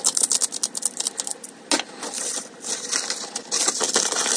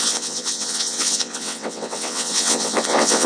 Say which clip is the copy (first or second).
second